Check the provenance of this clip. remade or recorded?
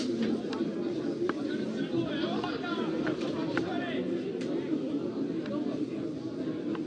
recorded